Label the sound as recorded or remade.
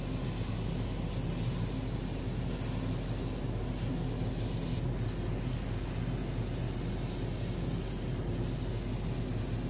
recorded